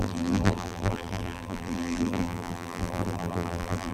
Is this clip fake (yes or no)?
yes